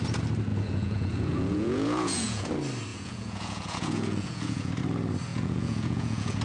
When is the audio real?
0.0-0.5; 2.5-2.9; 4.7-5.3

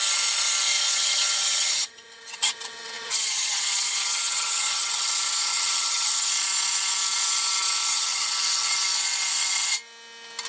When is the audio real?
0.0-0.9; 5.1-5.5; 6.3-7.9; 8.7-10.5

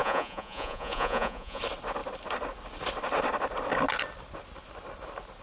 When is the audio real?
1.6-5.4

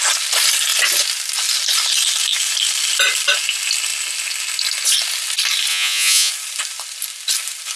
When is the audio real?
0.0-5.7; 6.3-7.8